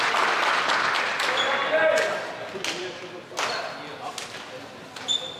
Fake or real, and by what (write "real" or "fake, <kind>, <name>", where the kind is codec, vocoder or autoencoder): real